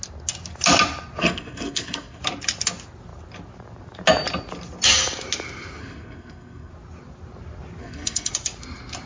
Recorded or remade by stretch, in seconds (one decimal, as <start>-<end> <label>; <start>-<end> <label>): 0.0-1.2 recorded; 1.2-2.2 remade; 2.2-5.8 recorded; 5.8-6.7 remade; 6.7-7.8 recorded; 7.8-8.3 remade; 8.3-9.1 recorded